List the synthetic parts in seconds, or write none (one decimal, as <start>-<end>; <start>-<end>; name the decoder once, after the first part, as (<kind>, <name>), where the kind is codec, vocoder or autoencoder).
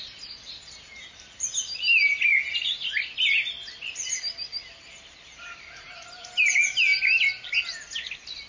none